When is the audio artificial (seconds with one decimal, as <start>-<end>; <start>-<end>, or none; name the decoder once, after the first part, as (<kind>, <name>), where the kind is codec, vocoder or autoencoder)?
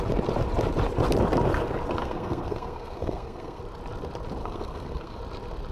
2.0-3.6 (codec, SNAC); 4.4-5.2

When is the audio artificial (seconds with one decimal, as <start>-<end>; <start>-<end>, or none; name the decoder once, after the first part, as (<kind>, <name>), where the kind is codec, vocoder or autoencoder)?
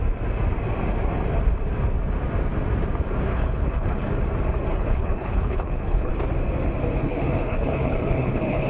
3.3-4.1 (codec, HILCodec); 4.7-6.1; 7.0-8.7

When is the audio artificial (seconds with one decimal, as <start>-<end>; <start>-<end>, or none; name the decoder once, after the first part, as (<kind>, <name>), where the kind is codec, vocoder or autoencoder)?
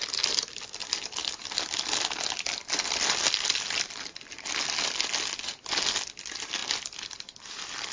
none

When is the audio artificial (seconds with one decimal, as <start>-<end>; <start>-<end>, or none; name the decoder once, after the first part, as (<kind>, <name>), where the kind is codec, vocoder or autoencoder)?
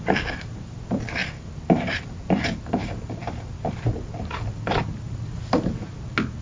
none